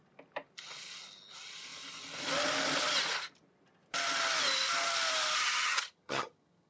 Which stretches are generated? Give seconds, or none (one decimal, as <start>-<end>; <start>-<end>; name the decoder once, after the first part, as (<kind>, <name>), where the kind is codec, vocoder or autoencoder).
5.4-6.7 (vocoder, HiFi-GAN)